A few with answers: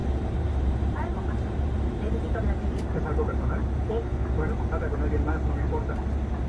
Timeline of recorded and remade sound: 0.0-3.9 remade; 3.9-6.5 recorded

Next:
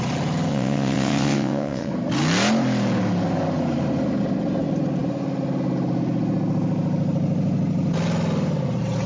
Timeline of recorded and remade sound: 0.0-0.5 recorded; 0.5-1.9 remade; 1.9-9.1 recorded

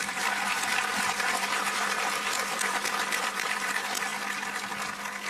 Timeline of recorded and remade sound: 0.0-4.1 remade; 4.1-5.3 recorded

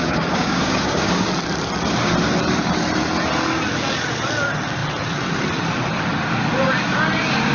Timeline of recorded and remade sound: 0.0-1.3 remade; 1.3-7.5 recorded

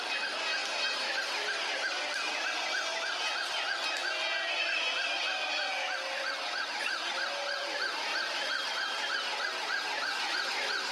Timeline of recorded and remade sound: 0.0-0.6 recorded; 0.6-2.5 remade; 2.5-8.1 recorded; 8.1-8.7 remade; 8.7-10.9 recorded

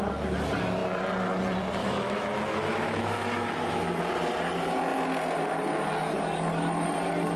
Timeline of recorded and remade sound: 0.0-1.8 recorded; 1.8-4.0 remade; 4.0-7.4 recorded

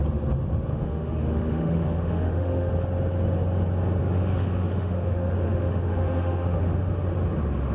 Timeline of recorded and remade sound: 0.0-0.7 recorded; 0.7-2.7 remade; 2.7-4.0 recorded; 4.0-6.9 remade; 6.9-7.7 recorded

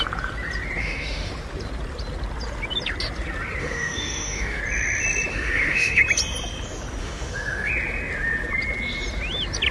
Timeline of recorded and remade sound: 0.0-0.8 recorded; 0.8-1.3 remade; 1.3-3.6 recorded; 3.6-4.6 remade; 4.6-5.3 recorded; 5.3-6.0 remade; 6.0-7.0 recorded; 7.0-7.7 remade; 7.7-9.7 recorded